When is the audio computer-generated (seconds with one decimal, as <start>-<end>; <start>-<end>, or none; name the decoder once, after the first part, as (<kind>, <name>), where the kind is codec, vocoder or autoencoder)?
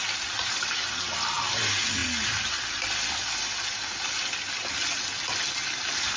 none